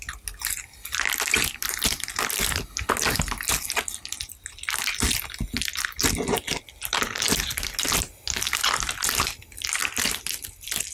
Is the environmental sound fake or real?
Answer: real